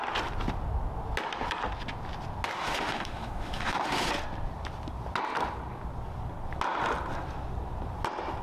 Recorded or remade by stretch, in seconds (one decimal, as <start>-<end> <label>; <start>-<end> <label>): 0.0-2.6 recorded; 2.6-4.1 remade; 4.1-8.4 recorded